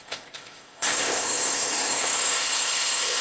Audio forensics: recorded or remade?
remade